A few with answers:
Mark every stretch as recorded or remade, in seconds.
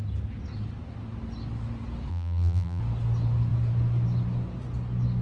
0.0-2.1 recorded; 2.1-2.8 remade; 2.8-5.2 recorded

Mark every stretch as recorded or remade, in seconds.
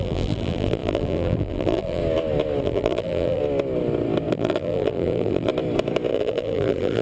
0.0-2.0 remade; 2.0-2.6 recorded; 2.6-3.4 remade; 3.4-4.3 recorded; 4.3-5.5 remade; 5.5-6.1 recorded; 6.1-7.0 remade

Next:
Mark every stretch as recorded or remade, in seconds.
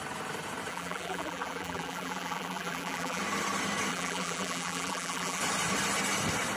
0.0-0.7 recorded; 0.7-3.2 remade; 3.2-3.9 recorded; 3.9-5.4 remade; 5.4-6.6 recorded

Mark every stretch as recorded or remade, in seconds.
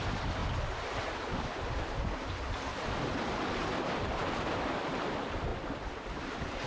0.0-4.2 remade; 4.2-4.8 recorded; 4.8-6.7 remade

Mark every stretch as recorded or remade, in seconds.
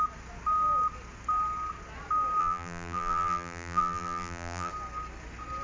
0.0-2.4 recorded; 2.4-4.7 remade; 4.7-5.6 recorded